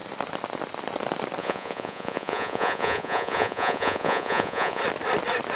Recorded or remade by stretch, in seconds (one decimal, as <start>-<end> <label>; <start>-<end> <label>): 0.0-1.4 recorded; 1.4-4.8 remade; 4.8-5.6 recorded